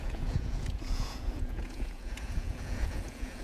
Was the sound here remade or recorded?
remade